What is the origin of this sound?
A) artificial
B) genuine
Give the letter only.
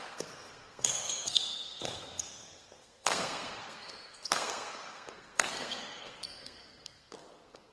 A